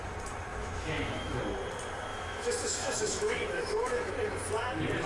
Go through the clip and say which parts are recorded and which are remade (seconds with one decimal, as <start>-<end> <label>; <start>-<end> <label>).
0.0-0.5 recorded; 0.5-1.4 remade; 1.4-2.1 recorded; 2.1-4.1 remade; 4.1-5.1 recorded

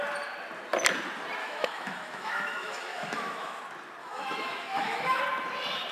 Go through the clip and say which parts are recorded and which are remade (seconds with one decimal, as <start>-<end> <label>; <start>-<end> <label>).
0.0-1.4 recorded; 1.4-3.6 remade; 3.6-4.0 recorded; 4.0-5.2 remade; 5.2-5.9 recorded

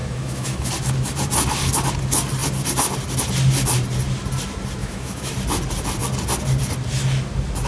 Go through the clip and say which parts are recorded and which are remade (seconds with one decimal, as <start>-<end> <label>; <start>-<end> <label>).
0.0-0.7 remade; 0.7-4.8 recorded; 4.8-5.3 remade; 5.3-7.7 recorded

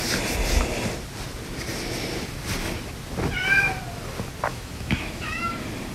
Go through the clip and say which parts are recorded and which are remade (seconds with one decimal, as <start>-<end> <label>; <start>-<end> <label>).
0.0-4.5 recorded; 4.5-5.5 remade; 5.5-5.9 recorded